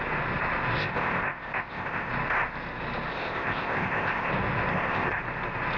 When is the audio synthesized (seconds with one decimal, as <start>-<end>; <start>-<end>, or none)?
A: 0.8-2.1; 3.1-4.3; 4.7-5.2